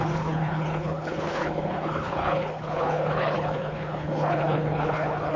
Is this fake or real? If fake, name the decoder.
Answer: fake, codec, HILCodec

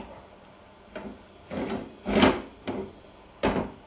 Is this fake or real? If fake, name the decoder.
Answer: real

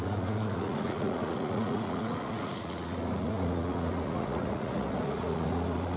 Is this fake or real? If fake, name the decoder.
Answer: fake, vocoder, Vocos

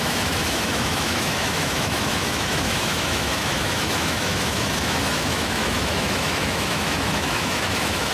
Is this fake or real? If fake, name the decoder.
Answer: fake, autoencoder, DAC-VAE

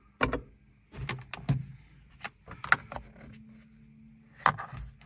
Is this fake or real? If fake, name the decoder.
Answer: real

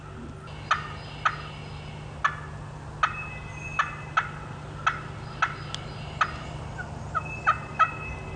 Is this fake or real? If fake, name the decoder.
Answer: real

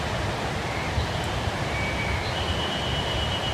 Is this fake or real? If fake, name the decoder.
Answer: real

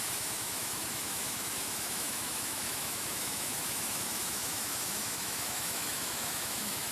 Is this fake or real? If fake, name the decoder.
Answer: fake, autoencoder, DAC-VAE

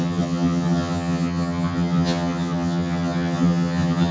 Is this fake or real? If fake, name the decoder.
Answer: fake, vocoder, HiFi-GAN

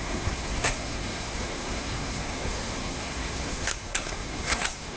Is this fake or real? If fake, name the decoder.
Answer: fake, codec, SNAC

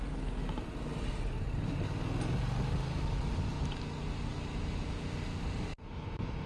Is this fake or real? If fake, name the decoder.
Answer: real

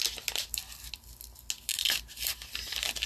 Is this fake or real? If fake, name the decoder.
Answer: real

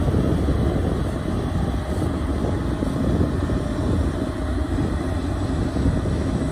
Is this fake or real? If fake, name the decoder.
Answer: real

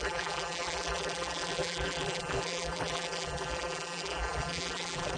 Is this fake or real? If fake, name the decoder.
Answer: fake, vocoder, BigVGAN v2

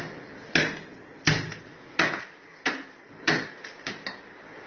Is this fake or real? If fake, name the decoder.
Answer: real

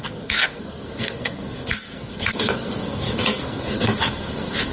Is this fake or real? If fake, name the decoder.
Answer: fake, codec, SNAC